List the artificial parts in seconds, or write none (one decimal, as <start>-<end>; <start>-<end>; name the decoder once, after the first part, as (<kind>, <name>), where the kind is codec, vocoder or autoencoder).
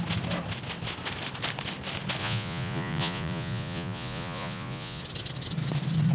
2.2-5.0 (vocoder, Vocos)